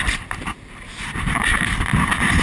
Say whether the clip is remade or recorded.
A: recorded